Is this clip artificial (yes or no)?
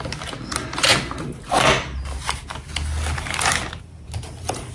no